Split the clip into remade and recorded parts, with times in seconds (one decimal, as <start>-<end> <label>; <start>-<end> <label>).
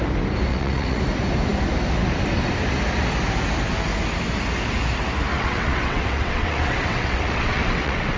0.0-0.5 recorded; 0.5-1.0 remade; 1.0-5.3 recorded; 5.3-8.2 remade